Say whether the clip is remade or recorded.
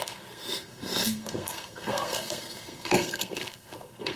remade